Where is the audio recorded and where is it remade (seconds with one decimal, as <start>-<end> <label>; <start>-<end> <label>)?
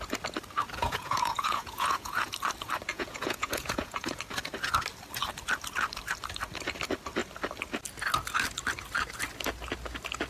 0.0-0.8 recorded; 0.8-2.3 remade; 2.3-2.9 recorded; 2.9-4.2 remade; 4.2-10.3 recorded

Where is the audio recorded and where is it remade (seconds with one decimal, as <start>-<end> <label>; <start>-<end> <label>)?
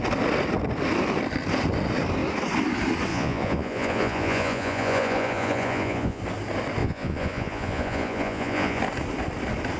0.0-3.1 recorded; 3.1-6.2 remade; 6.2-6.8 recorded; 6.8-8.8 remade; 8.8-9.8 recorded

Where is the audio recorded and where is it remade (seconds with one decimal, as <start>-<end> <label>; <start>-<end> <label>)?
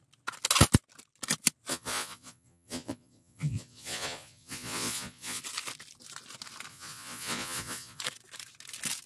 0.0-1.7 recorded; 1.7-5.4 remade; 5.4-6.7 recorded; 6.7-8.0 remade; 8.0-9.1 recorded